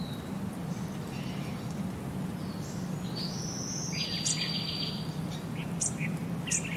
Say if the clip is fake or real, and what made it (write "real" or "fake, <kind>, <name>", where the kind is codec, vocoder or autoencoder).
real